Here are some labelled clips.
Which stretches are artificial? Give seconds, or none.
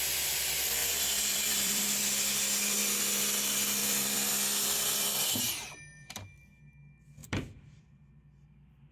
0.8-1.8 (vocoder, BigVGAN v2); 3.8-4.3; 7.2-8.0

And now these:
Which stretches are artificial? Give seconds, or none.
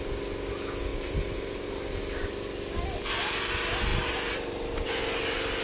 0.9-2.0 (vocoder, BigVGAN v2)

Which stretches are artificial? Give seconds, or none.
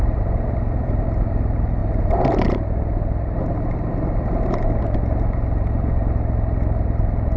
0.0-7.4 (vocoder, BigVGAN v2)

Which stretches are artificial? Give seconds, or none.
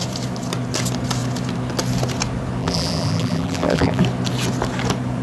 2.6-4.0 (vocoder, BigVGAN v2)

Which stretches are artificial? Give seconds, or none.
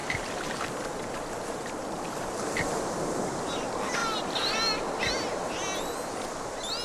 0.0-0.6 (vocoder, BigVGAN v2); 1.8-3.2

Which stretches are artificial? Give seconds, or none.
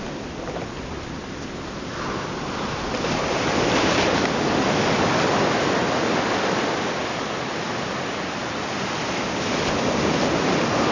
none